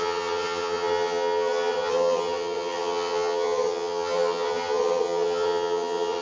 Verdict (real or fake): fake